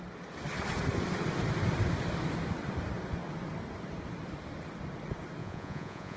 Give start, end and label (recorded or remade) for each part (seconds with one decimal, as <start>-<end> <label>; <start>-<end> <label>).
0.0-5.4 recorded; 5.4-6.2 remade